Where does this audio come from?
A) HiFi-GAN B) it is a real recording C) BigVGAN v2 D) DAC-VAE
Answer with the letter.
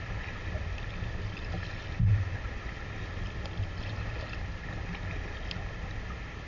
B